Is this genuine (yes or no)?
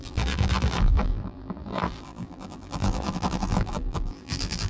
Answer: no